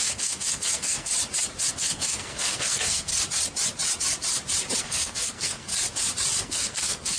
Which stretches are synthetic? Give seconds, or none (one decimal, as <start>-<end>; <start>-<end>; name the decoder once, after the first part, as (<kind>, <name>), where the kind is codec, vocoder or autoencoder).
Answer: 0.0-1.1 (codec, SNAC); 1.7-3.1; 4.8-5.7; 6.4-7.2